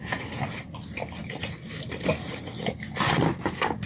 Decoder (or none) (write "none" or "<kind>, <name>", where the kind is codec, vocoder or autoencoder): none